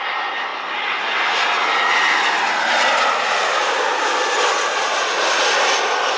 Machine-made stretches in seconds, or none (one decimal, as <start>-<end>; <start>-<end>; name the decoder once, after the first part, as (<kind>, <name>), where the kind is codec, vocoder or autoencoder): none

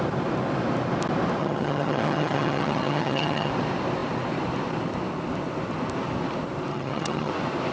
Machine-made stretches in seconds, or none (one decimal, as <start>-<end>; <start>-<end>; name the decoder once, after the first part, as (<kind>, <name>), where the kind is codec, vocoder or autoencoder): 1.4-3.5 (vocoder, HiFi-GAN); 6.7-7.3

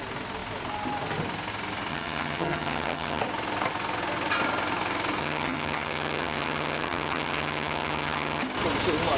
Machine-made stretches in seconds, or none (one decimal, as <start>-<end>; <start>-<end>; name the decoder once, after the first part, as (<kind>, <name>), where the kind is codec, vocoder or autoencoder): 1.9-3.2 (vocoder, HiFi-GAN); 5.2-8.4

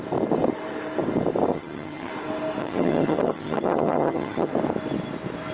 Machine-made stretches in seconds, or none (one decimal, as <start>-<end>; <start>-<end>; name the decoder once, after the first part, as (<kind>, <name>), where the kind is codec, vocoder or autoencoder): 1.5-2.1 (vocoder, HiFi-GAN); 2.6-4.5

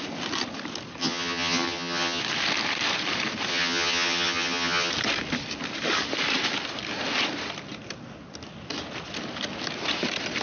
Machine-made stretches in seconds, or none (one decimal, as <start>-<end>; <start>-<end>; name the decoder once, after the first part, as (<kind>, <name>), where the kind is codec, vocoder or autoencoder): 1.0-2.2 (vocoder, HiFi-GAN); 3.5-4.9